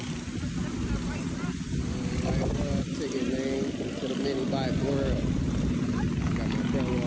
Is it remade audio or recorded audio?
recorded